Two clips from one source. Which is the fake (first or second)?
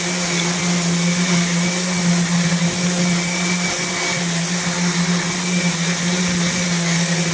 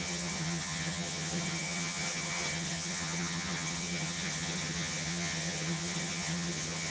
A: second